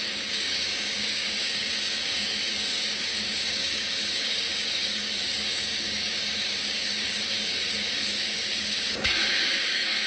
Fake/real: fake